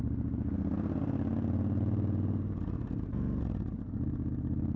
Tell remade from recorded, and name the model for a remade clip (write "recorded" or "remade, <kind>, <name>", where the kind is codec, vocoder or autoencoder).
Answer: recorded